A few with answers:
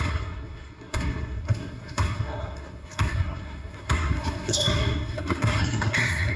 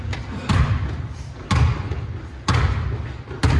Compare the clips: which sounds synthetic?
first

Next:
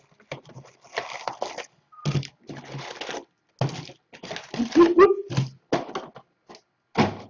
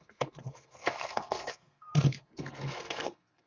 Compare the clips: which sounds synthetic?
second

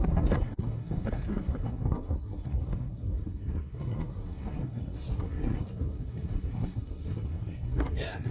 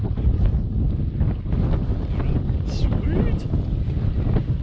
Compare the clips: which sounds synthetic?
first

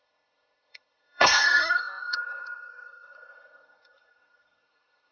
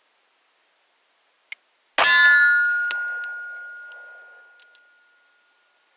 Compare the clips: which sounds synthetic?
first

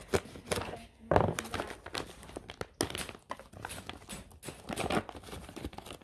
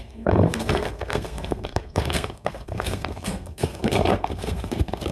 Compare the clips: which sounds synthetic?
second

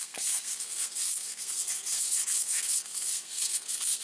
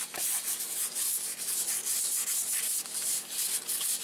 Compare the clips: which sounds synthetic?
first